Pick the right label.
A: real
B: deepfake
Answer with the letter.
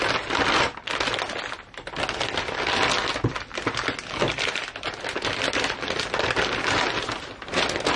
A